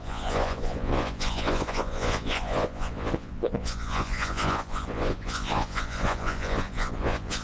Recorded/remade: remade